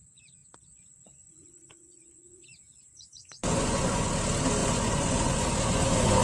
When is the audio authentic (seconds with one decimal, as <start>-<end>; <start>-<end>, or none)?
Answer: 0.0-0.4; 4.1-4.6